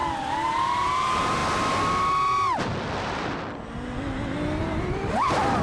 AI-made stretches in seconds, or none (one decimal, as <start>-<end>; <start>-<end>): 0.0-1.4; 4.6-5.6